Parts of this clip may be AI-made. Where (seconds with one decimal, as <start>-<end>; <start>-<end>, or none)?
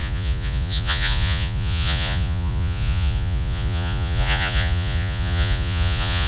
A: 0.0-6.3